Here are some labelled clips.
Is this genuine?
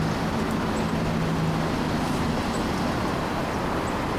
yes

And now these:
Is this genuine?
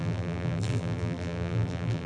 no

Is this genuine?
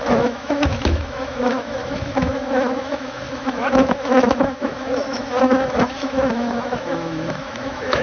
no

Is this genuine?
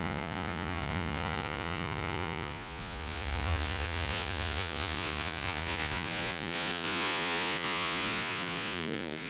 no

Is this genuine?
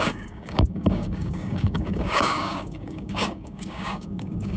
no